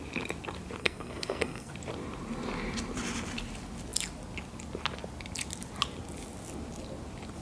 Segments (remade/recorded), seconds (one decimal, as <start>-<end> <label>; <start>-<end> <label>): 0.0-0.8 recorded; 0.8-1.7 remade; 1.7-7.4 recorded